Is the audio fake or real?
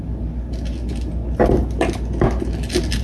real